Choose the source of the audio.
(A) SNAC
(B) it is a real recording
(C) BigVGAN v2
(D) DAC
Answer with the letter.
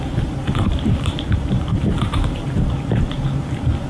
C